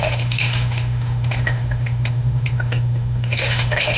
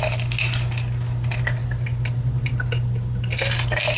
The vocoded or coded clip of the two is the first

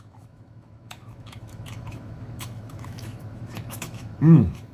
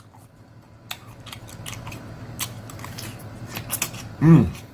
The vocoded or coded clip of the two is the first